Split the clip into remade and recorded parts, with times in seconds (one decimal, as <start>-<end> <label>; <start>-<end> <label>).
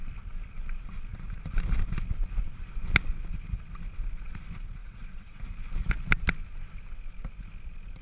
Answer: 0.0-4.8 recorded; 4.8-5.4 remade; 5.4-8.0 recorded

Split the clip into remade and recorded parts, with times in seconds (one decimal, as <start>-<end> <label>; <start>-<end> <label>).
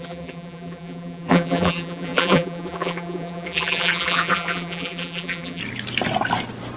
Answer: 0.0-5.6 remade; 5.6-6.8 recorded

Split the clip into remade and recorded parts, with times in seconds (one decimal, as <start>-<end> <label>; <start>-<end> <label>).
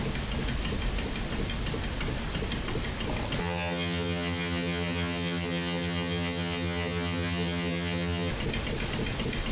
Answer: 0.0-3.4 recorded; 3.4-8.3 remade; 8.3-9.5 recorded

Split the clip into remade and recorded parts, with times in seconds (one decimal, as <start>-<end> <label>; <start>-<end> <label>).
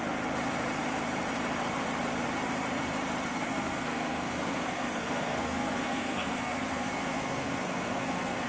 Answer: 0.0-3.3 recorded; 3.3-8.5 remade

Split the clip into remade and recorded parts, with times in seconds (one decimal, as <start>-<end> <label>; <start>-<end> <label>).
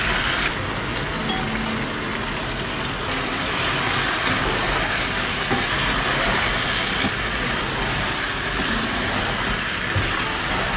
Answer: 0.0-10.8 recorded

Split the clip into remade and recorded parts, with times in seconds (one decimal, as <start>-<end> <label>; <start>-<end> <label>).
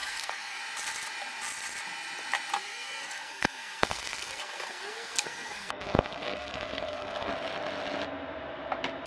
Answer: 0.0-0.6 remade; 0.6-2.6 recorded; 2.6-7.3 remade; 7.3-9.1 recorded